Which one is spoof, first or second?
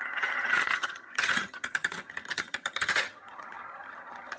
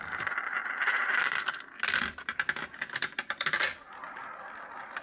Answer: first